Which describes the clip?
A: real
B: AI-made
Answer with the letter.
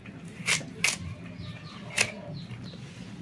A